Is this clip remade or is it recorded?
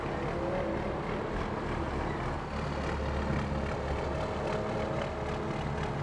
recorded